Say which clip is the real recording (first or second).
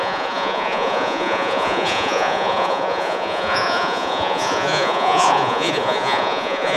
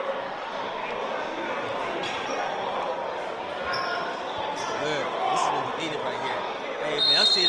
second